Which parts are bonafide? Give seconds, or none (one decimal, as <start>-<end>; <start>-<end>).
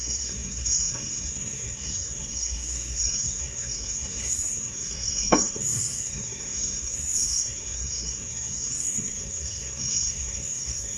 none